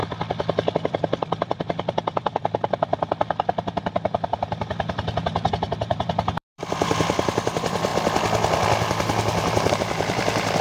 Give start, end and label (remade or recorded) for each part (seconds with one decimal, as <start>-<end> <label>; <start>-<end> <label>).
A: 0.0-0.7 recorded; 0.7-2.9 remade; 2.9-5.5 recorded; 5.5-7.9 remade; 7.9-9.7 recorded; 9.7-10.6 remade